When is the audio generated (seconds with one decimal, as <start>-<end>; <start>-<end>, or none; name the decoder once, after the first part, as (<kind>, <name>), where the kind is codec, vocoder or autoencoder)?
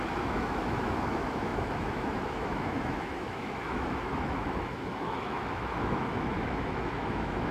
0.0-7.5 (autoencoder, DAC-VAE)